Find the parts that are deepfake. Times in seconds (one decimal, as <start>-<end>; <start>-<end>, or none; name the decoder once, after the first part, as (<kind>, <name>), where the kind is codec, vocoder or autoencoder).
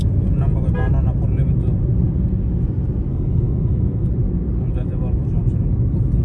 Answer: 3.1-4.1 (codec, SNAC)